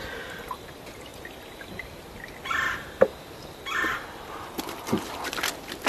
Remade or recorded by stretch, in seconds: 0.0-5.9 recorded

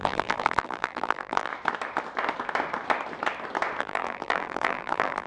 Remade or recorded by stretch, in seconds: 0.0-1.5 remade; 1.5-3.8 recorded; 3.8-5.3 remade

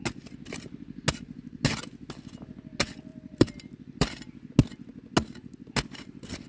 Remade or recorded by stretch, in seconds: 0.0-3.1 recorded; 3.1-4.5 remade; 4.5-6.5 recorded

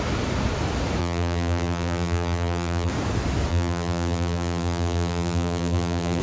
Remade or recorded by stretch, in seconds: 0.0-1.0 recorded; 1.0-2.9 remade; 2.9-3.5 recorded; 3.5-6.2 remade

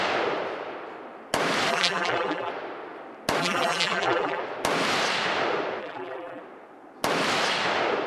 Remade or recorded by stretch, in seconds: 0.0-1.7 recorded; 1.7-2.5 remade; 2.5-3.4 recorded; 3.4-4.4 remade; 4.4-5.8 recorded; 5.8-6.4 remade; 6.4-8.1 recorded